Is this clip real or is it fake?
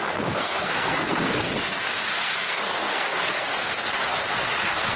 fake